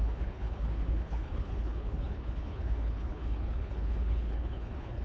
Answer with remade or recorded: remade